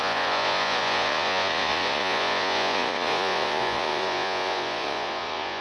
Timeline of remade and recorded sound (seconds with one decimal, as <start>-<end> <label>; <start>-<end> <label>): 0.0-5.6 remade